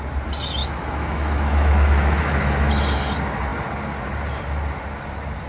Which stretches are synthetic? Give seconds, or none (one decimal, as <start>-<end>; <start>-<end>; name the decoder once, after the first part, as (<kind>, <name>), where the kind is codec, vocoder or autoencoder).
0.6-2.7 (autoencoder, DAC-VAE)